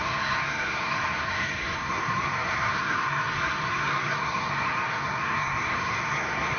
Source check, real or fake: fake